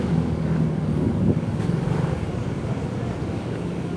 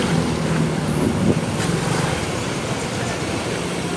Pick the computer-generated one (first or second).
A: first